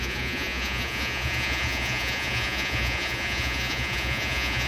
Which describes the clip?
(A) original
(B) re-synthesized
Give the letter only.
B